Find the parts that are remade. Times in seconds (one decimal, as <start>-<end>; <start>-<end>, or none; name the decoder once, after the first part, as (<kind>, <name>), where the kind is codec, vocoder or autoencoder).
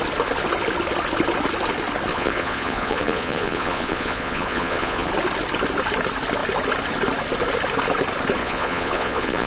2.1-5.1 (vocoder, Vocos); 8.4-9.5